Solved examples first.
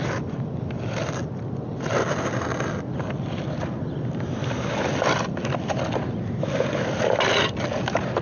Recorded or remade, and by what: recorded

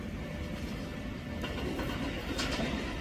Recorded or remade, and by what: recorded